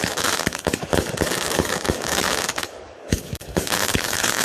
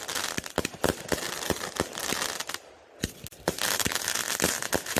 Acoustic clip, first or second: second